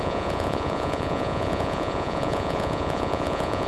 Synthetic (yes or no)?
yes